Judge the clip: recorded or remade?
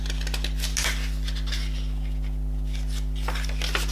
recorded